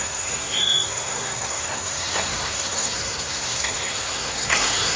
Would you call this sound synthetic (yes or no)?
yes